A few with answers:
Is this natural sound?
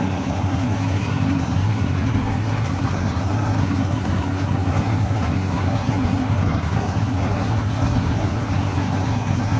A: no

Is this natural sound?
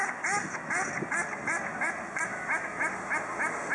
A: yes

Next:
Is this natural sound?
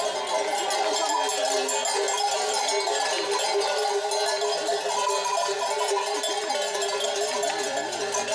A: yes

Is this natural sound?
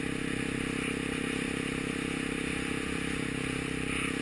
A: yes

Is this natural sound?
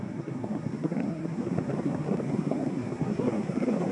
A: no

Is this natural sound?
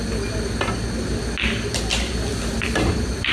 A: yes